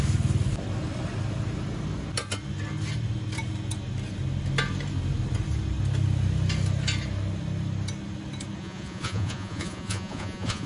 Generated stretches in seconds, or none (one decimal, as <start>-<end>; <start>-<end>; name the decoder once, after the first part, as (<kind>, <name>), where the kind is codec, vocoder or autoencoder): 8.6-10.7 (vocoder, Vocos)